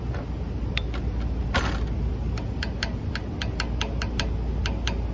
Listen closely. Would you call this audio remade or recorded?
recorded